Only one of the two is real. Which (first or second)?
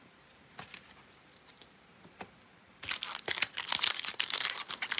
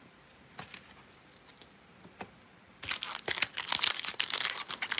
second